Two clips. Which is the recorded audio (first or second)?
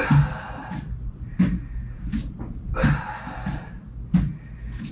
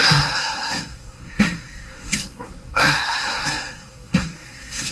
first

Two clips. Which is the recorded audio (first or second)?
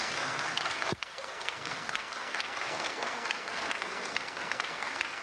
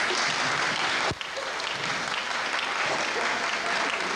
second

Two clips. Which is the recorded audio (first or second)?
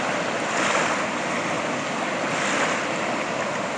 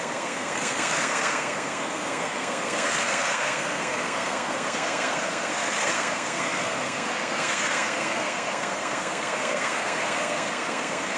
first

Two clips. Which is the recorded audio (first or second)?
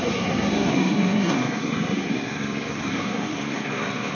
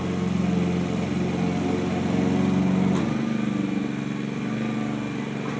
second